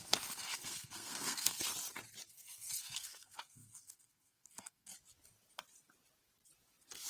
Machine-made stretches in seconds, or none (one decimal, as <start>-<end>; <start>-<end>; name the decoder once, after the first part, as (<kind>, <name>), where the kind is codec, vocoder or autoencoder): 0.0-1.7 (codec, SNAC); 2.3-4.9